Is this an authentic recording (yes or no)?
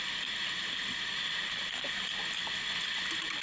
yes